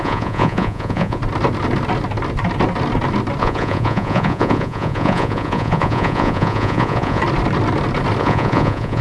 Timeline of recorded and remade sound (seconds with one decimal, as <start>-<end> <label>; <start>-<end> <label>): 0.0-1.2 remade; 1.2-3.4 recorded; 3.4-7.2 remade; 7.2-8.2 recorded; 8.2-9.0 remade